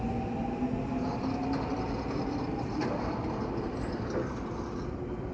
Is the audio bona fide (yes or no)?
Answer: yes